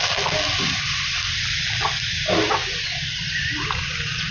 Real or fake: real